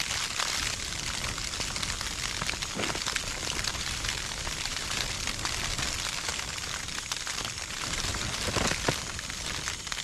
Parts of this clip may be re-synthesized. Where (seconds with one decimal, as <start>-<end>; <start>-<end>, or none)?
3.7-5.1; 6.3-8.4